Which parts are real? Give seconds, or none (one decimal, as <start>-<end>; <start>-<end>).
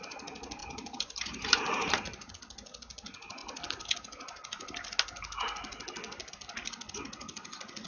0.0-0.6; 2.3-7.9